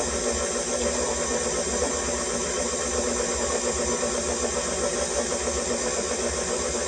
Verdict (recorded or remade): recorded